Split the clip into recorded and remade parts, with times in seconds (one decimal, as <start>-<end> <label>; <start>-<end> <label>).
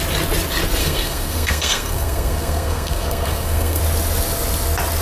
0.0-0.8 recorded; 0.8-3.8 remade; 3.8-5.0 recorded